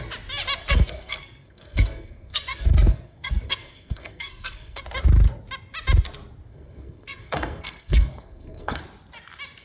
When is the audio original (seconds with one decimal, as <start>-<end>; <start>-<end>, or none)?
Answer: 0.0-0.6; 4.8-6.5; 8.8-9.6